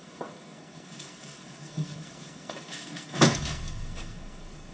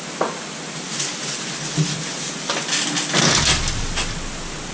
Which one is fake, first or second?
first